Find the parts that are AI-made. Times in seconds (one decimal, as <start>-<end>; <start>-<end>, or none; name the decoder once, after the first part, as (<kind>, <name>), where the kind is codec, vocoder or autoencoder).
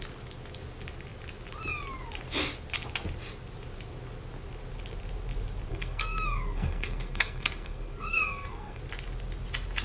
5.7-8.8 (codec, SNAC)